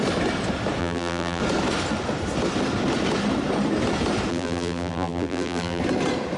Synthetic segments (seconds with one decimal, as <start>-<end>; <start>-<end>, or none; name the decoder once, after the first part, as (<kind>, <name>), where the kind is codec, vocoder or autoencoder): 0.8-1.4 (vocoder, BigVGAN v2); 4.3-5.8